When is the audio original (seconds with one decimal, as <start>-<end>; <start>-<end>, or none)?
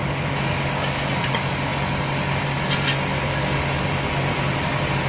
0.0-1.2; 1.7-4.3